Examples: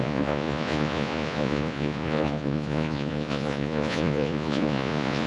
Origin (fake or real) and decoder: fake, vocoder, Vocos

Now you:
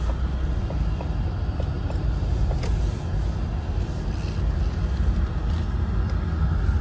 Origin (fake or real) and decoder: real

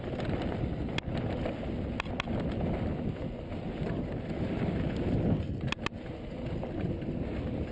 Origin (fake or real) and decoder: real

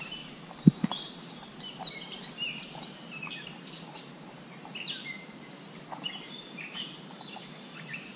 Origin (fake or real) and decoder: fake, vocoder, BigVGAN v2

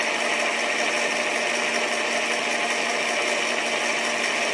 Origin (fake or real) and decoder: real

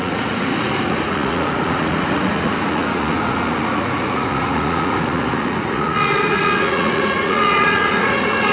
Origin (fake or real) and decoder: fake, vocoder, Vocos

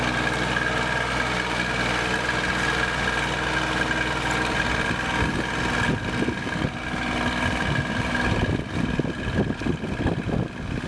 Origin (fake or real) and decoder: real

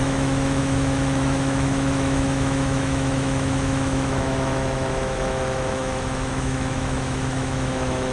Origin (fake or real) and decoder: fake, autoencoder, DAC-VAE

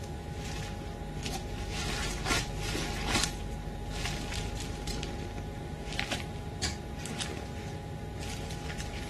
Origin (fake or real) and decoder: real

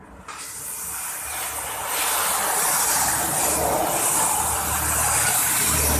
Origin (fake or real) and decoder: real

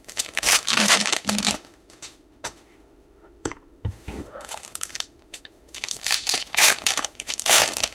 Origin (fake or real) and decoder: fake, autoencoder, DAC-VAE